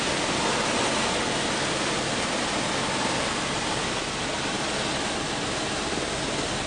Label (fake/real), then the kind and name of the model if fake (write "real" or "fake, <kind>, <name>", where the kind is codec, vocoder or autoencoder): real